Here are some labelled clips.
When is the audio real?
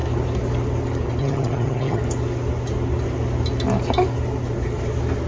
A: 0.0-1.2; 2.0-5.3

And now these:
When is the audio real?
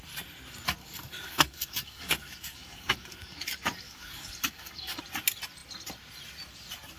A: 0.0-0.8; 5.0-7.0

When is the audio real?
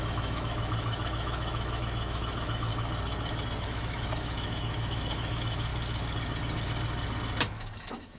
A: 2.7-3.6; 5.7-7.4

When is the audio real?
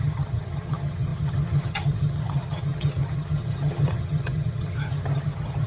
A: none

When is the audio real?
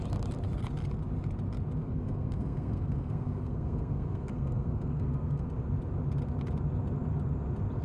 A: 0.0-1.8; 5.5-7.8